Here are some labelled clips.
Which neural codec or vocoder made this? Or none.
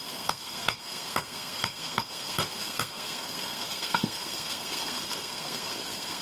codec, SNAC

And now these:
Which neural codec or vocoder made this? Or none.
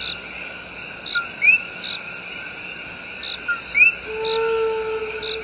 none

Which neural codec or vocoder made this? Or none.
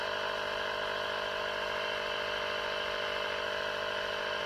none